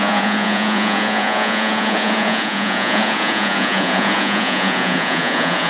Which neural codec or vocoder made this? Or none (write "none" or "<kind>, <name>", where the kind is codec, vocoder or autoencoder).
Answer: vocoder, Vocos